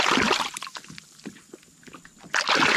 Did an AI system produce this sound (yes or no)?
no